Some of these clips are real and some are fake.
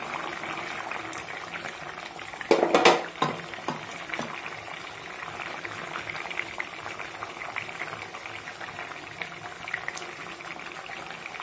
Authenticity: real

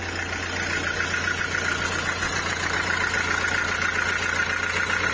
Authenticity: real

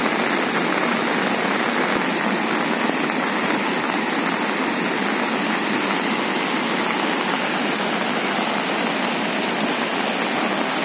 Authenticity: real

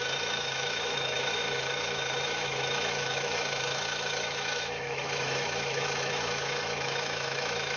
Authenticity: fake